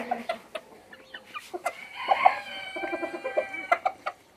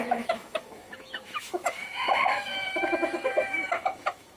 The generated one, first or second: second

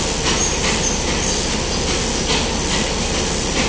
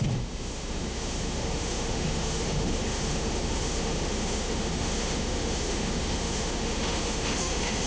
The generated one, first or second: second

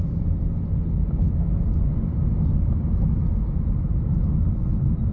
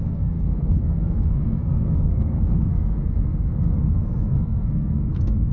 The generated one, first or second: second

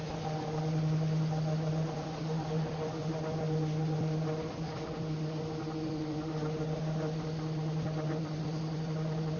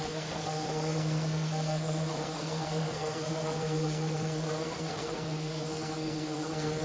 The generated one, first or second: second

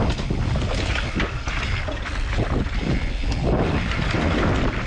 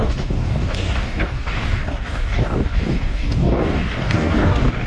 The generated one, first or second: second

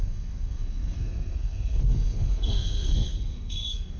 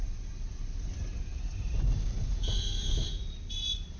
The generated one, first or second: first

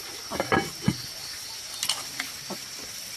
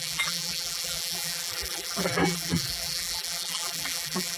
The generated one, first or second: second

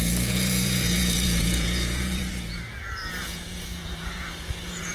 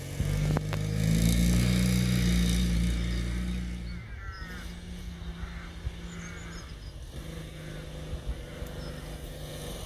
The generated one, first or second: first